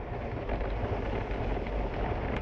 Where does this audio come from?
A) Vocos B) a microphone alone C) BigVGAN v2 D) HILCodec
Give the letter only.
B